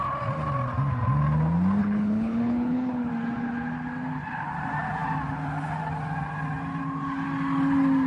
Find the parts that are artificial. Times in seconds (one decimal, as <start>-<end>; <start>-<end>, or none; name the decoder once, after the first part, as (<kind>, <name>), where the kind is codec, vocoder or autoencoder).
1.8-3.1 (codec, HILCodec)